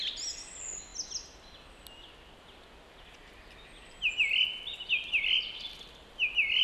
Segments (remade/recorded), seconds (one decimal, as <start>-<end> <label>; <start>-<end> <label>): 0.0-6.6 recorded